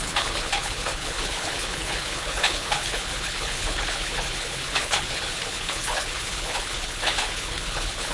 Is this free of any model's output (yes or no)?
no